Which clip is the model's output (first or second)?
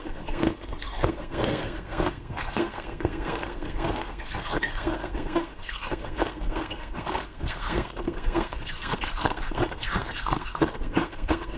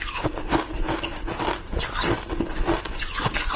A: first